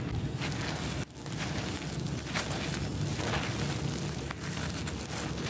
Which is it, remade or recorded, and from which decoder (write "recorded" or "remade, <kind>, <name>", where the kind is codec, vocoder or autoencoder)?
recorded